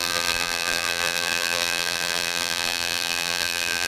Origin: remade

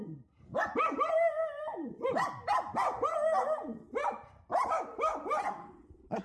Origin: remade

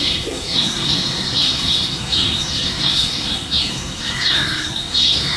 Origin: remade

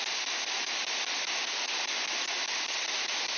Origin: recorded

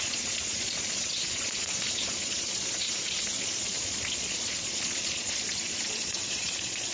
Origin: remade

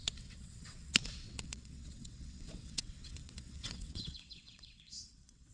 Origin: remade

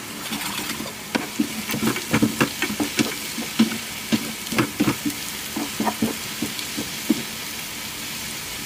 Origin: recorded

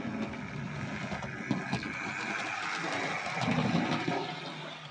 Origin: recorded